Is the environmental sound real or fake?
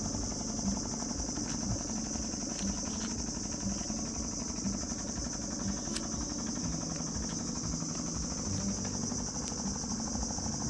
real